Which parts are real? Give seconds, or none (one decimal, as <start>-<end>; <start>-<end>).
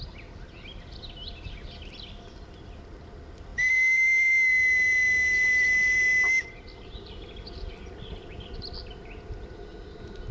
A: 0.0-10.3